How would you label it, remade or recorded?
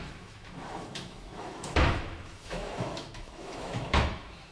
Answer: remade